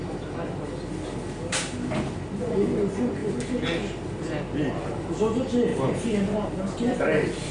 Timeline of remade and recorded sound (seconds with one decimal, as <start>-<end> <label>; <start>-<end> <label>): 0.0-5.7 recorded; 5.7-7.5 remade